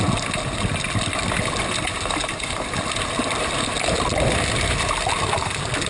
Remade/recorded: recorded